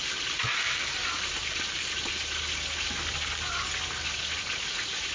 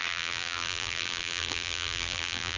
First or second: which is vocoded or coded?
second